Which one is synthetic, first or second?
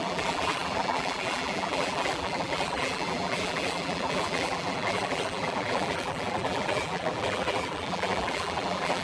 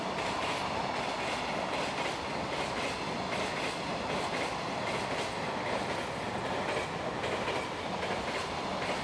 first